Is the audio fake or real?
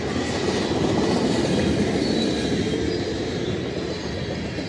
real